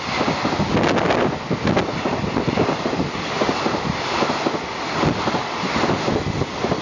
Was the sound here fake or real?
real